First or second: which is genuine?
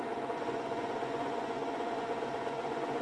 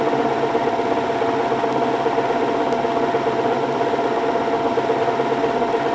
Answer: second